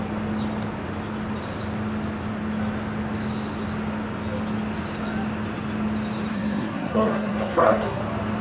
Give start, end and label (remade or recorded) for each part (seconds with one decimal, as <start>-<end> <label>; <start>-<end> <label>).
0.0-6.3 recorded; 6.3-8.0 remade; 8.0-8.4 recorded